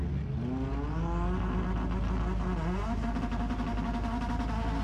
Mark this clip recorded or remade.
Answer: recorded